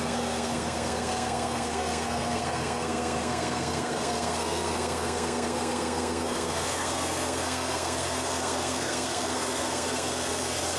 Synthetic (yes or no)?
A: yes